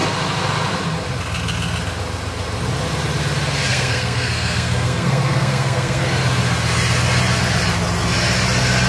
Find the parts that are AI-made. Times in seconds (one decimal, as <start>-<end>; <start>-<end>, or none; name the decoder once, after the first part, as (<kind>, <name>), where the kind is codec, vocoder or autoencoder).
3.7-6.0 (codec, SNAC)